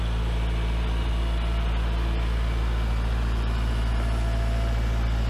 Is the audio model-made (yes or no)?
no